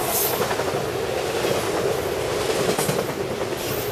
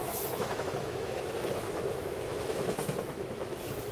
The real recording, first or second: first